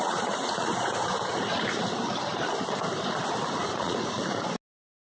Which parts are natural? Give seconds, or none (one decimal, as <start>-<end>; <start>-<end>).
0.7-3.8; 4.2-5.2